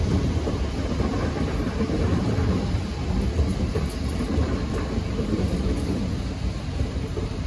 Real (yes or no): yes